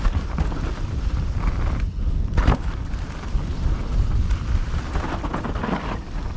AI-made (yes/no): no